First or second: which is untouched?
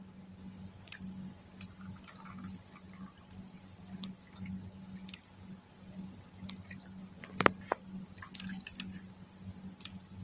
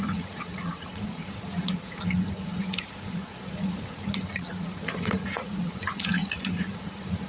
first